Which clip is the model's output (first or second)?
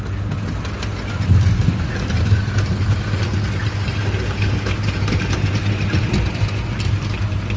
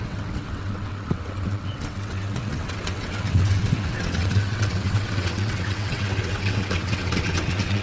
second